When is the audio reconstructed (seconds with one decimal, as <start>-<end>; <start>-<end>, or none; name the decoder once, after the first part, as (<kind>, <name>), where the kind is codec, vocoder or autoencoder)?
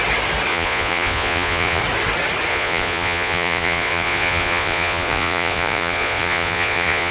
0.5-1.8 (vocoder, Vocos); 2.5-7.1